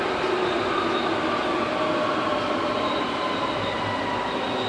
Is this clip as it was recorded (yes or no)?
yes